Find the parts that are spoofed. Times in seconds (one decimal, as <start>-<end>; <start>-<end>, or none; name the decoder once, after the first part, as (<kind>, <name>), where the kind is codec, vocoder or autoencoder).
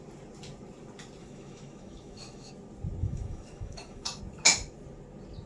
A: 1.2-2.5 (autoencoder, DAC-VAE); 3.0-4.2